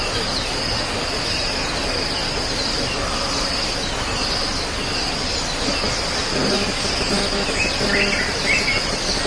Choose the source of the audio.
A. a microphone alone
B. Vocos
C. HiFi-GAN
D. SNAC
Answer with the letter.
A